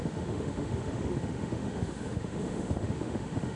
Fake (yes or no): yes